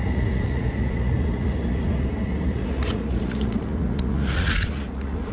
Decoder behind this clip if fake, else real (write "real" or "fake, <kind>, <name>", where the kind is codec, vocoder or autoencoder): fake, vocoder, Vocos